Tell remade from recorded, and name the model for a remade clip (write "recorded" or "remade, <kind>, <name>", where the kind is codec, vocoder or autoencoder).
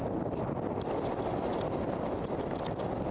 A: recorded